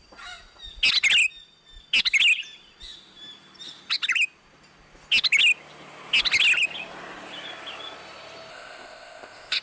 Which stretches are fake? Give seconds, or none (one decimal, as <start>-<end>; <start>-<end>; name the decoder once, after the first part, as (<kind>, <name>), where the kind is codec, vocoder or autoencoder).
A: 8.5-9.6 (codec, ZipCodec)